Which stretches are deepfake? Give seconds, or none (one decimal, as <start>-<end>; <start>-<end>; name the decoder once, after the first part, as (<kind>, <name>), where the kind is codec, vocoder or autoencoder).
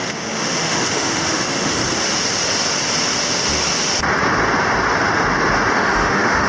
0.0-1.8 (autoencoder, DAC-VAE); 5.7-6.5